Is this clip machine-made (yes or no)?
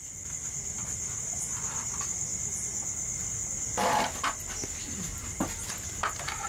no